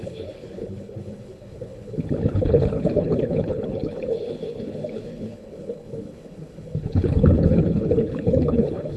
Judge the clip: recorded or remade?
remade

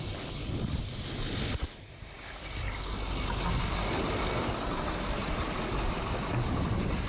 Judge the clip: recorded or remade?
recorded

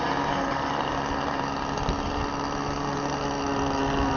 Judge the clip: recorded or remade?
recorded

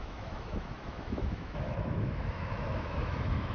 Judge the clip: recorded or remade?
remade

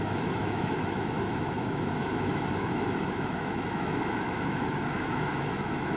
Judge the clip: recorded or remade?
remade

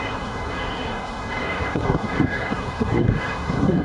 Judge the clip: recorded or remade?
remade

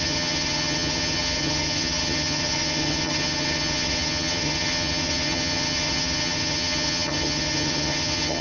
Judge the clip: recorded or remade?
remade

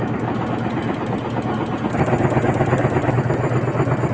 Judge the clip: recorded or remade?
recorded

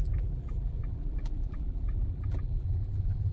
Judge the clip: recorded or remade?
remade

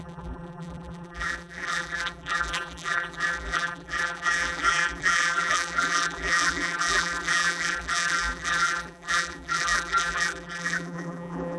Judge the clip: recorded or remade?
remade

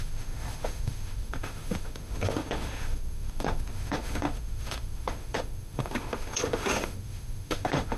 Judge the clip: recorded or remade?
remade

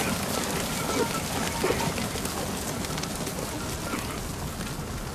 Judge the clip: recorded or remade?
recorded